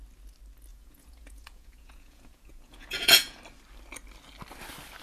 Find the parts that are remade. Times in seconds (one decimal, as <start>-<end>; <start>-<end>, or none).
0.7-3.4